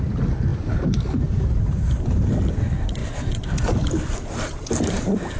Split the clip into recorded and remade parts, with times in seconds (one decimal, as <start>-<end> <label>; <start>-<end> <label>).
0.0-5.4 recorded